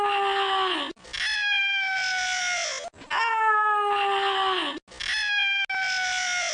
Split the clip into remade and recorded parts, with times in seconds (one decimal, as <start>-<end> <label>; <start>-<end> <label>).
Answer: 0.0-6.5 recorded